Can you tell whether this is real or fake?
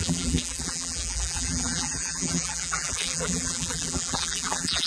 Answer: fake